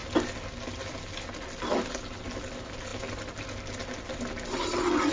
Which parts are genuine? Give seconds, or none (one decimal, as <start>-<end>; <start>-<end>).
0.0-5.1